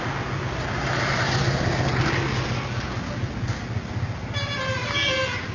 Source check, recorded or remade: recorded